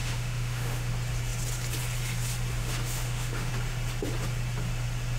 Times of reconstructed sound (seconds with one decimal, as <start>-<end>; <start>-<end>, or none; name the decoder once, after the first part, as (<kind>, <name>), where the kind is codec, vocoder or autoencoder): 0.0-0.9 (autoencoder, DAC-VAE); 2.6-3.5